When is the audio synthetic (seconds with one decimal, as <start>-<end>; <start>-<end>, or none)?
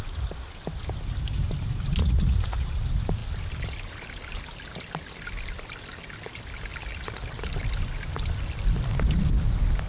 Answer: 2.0-2.7